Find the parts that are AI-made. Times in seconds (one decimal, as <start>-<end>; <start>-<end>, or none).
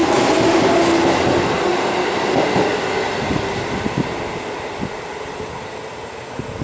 none